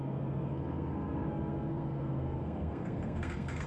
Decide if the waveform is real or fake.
fake